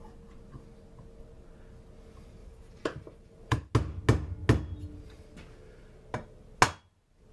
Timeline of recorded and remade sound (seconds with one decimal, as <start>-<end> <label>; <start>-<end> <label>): 0.0-2.4 recorded; 2.4-3.7 remade; 3.7-7.3 recorded